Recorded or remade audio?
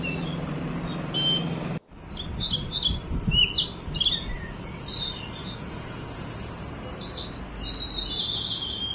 recorded